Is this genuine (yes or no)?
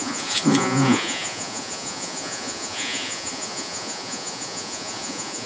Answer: no